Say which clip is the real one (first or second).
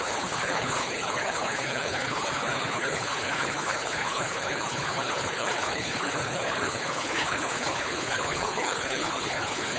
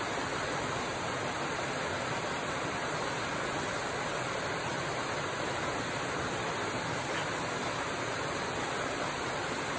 second